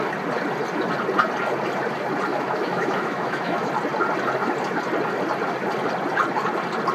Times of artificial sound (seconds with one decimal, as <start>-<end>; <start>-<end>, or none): 2.3-3.7